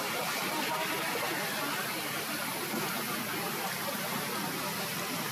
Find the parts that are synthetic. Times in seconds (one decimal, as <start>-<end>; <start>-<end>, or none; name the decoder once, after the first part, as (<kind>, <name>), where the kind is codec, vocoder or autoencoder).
none